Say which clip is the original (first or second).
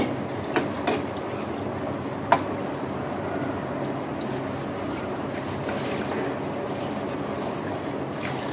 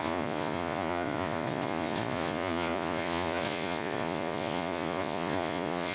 first